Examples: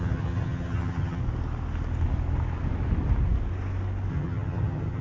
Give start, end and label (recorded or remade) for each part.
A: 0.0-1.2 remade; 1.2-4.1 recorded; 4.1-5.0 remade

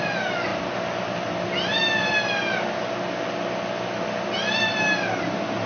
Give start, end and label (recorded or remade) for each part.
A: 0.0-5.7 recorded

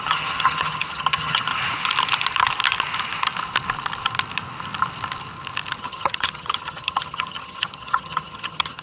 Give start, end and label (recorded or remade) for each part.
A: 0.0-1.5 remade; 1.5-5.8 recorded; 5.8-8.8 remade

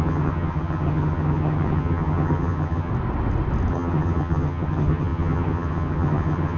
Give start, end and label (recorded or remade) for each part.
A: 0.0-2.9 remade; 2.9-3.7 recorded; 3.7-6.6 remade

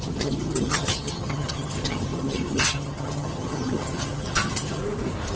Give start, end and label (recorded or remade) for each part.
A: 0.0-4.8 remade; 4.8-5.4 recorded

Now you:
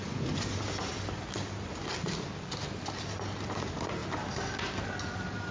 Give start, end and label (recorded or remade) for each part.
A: 0.0-5.5 recorded

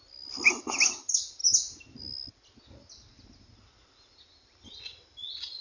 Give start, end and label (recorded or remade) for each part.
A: 0.0-5.6 recorded

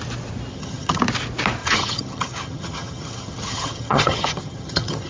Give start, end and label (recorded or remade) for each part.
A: 0.0-0.5 recorded; 0.5-1.0 remade; 1.0-1.6 recorded; 1.6-5.1 remade